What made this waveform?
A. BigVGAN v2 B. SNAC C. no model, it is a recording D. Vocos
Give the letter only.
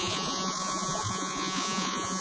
D